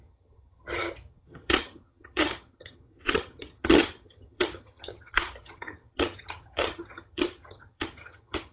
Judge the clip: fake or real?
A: fake